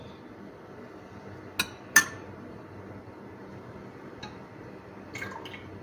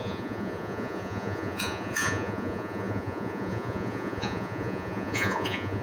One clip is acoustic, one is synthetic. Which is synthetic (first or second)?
second